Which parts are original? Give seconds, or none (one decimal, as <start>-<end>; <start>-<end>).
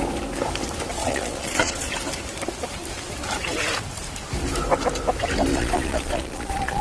0.0-1.0; 1.9-5.5